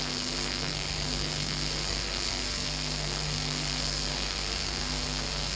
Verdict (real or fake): fake